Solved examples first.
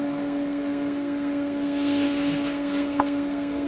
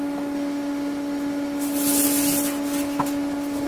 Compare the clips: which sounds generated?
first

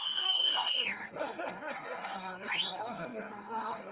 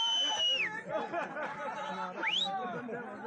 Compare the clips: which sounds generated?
first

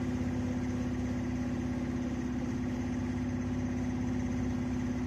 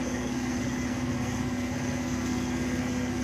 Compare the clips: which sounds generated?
second